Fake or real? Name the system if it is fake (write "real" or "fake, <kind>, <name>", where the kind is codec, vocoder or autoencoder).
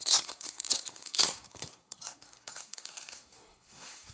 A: fake, codec, SNAC